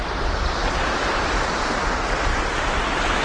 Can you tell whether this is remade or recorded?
recorded